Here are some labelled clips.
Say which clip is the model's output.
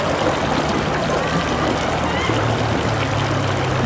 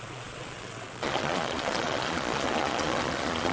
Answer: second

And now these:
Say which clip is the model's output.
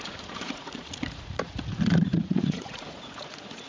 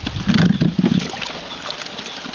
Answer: first